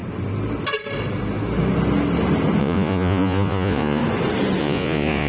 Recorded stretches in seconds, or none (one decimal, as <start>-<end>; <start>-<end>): 0.0-2.6; 4.0-4.6